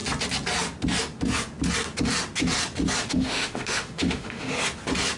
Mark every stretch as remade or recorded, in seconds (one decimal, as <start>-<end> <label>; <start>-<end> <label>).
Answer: 0.0-3.1 recorded; 3.1-4.5 remade; 4.5-5.2 recorded